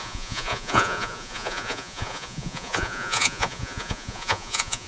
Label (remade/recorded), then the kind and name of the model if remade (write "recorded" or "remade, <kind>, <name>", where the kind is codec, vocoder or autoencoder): remade, vocoder, Vocos